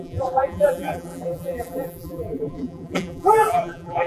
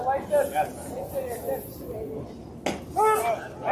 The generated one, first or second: first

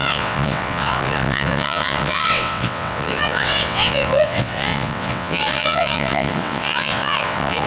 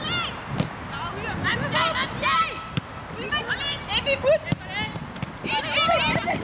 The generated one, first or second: first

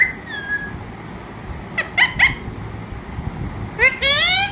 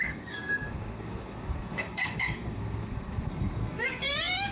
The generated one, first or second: second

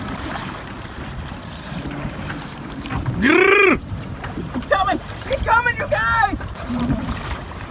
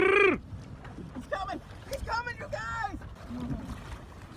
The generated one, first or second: first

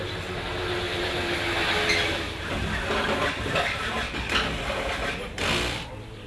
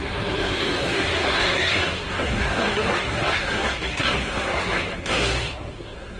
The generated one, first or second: second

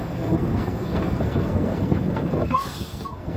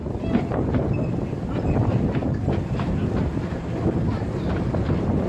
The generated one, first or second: first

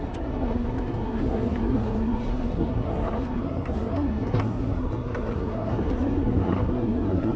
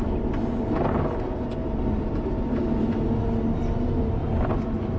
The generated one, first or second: first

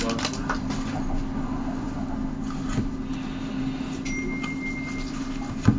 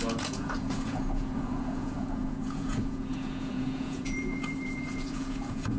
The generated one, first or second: second